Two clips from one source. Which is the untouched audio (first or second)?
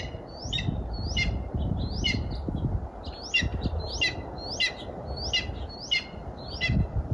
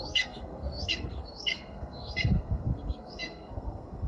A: first